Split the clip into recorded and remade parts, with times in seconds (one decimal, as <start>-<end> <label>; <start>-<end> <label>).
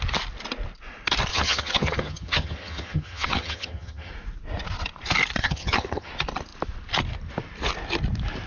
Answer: 0.0-1.3 recorded; 1.3-4.1 remade; 4.1-5.4 recorded; 5.4-6.1 remade; 6.1-8.5 recorded